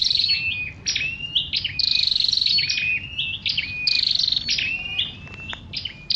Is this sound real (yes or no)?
yes